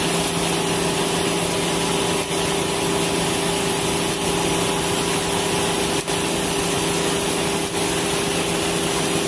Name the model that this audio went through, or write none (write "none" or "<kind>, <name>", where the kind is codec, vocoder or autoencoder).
none